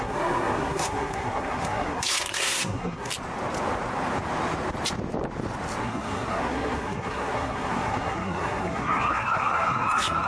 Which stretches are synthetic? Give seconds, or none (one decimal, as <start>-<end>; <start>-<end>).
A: 0.0-3.1; 5.8-10.3